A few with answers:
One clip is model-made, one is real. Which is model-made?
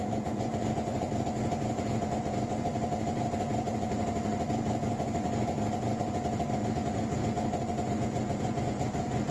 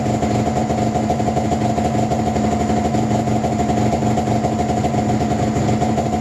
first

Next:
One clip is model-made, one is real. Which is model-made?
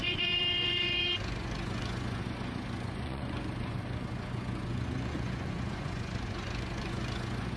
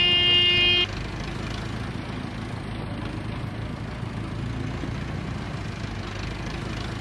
first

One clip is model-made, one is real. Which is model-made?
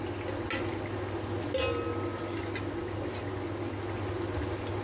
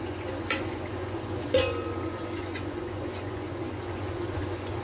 second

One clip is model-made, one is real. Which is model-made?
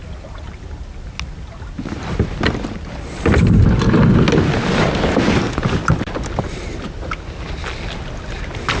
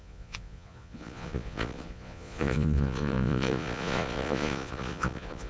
second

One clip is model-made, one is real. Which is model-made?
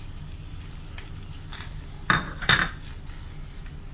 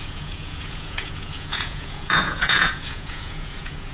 second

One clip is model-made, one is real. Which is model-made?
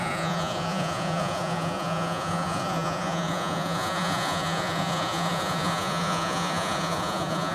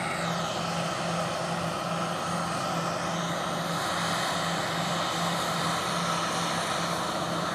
first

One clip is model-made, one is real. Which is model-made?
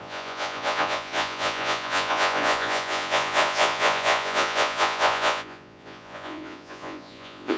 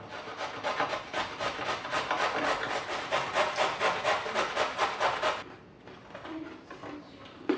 first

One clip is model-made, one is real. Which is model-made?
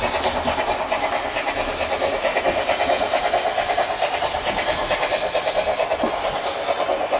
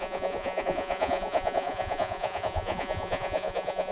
second